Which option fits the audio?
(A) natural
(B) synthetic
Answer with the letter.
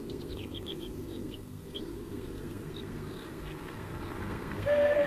B